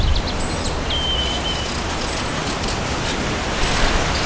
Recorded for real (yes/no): yes